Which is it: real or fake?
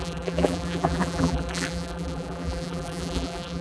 fake